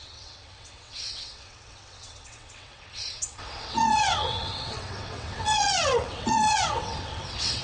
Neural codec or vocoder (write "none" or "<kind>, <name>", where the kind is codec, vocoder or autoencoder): vocoder, WaveNeXt